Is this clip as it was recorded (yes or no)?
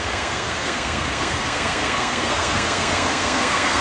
no